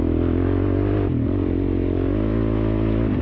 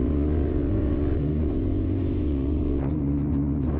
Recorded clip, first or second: first